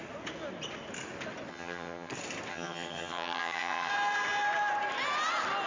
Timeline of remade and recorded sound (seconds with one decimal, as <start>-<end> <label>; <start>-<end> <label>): 0.0-1.5 recorded; 1.5-2.1 remade; 2.1-2.5 recorded; 2.5-3.9 remade; 3.9-5.7 recorded

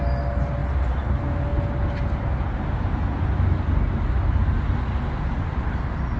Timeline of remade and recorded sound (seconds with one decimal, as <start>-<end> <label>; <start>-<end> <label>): 0.0-6.2 recorded

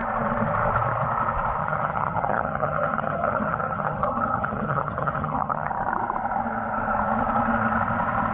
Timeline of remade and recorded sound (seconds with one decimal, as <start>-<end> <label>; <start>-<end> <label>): 0.0-1.6 recorded; 1.6-5.7 remade; 5.7-8.3 recorded

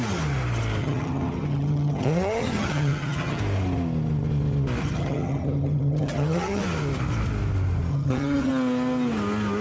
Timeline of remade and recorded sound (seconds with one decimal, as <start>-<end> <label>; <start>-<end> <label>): 0.0-0.8 recorded; 0.8-3.4 remade; 3.4-4.8 recorded; 4.8-6.6 remade; 6.6-7.9 recorded; 7.9-8.5 remade; 8.5-9.6 recorded

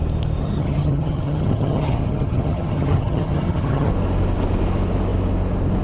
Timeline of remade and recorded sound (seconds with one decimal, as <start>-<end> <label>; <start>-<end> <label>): 0.0-0.4 recorded; 0.4-3.9 remade; 3.9-5.8 recorded